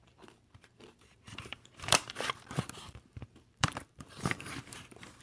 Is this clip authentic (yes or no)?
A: no